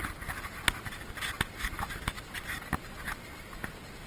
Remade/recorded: recorded